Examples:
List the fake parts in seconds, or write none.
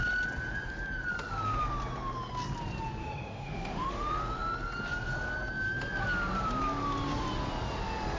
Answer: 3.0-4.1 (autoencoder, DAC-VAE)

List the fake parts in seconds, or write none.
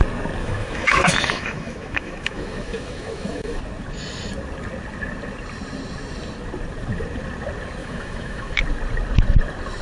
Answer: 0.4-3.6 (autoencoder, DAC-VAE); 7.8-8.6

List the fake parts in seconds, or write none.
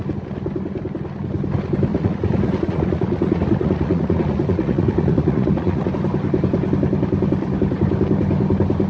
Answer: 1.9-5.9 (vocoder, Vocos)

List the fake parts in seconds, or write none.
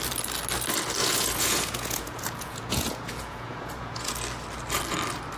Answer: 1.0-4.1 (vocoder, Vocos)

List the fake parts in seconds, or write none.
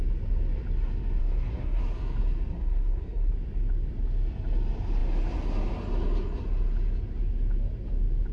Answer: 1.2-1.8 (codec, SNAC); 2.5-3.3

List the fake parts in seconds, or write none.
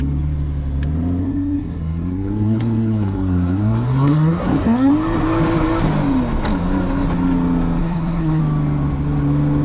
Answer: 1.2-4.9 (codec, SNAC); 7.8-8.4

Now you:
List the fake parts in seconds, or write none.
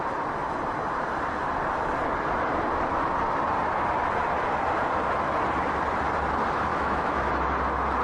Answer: 6.7-7.3 (autoencoder, DAC-VAE)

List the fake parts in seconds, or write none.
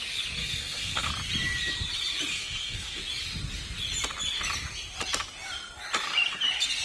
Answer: 0.4-1.1 (codec, SNAC); 2.3-3.0